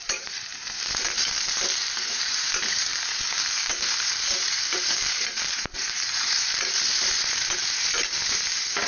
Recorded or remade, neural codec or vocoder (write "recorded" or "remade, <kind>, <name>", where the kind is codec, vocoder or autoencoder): remade, vocoder, BigVGAN v2